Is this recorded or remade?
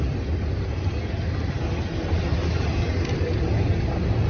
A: recorded